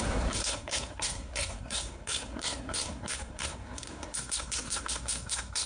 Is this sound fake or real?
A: fake